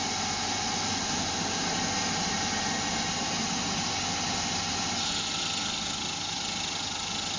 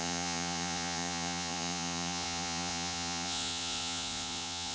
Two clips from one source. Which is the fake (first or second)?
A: second